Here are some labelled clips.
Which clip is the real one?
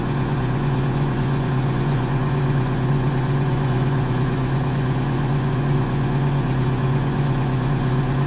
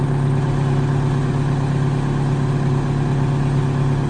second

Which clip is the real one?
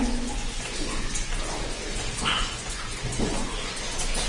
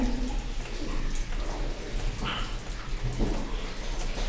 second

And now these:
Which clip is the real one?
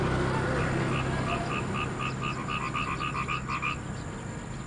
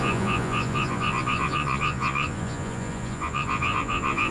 first